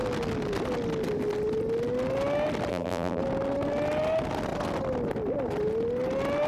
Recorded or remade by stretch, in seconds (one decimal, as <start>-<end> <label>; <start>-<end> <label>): 0.0-2.7 recorded; 2.7-3.2 remade; 3.2-6.5 recorded